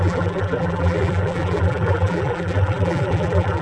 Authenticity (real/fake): fake